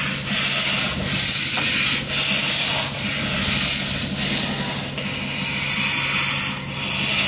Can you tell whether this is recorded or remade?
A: recorded